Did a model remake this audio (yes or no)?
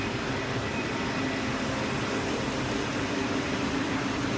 no